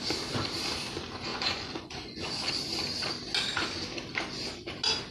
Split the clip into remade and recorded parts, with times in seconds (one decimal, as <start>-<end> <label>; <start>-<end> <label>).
0.0-1.3 recorded; 1.3-2.3 remade; 2.3-5.1 recorded